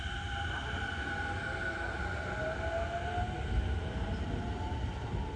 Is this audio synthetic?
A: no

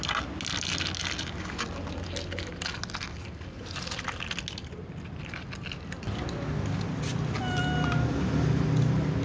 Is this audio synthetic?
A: no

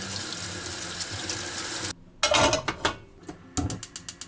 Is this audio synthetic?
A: no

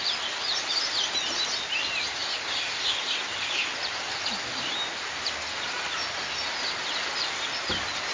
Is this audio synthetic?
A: no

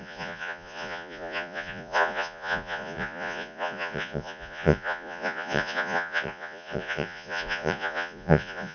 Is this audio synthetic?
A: yes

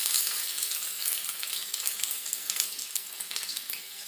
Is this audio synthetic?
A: yes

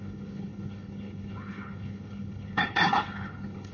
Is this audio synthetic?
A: yes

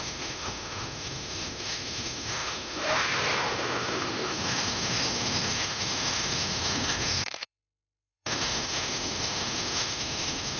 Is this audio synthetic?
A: yes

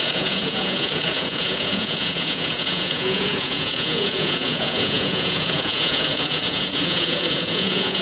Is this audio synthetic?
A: yes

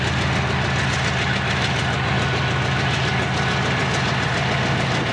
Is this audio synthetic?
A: no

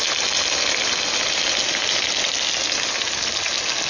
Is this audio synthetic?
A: no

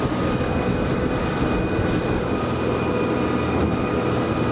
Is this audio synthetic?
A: no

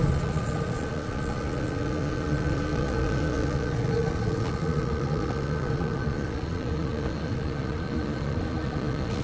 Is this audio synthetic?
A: yes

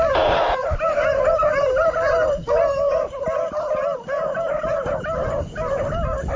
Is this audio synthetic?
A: no